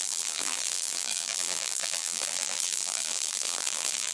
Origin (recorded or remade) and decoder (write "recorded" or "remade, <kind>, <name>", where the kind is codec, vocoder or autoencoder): remade, vocoder, BigVGAN v2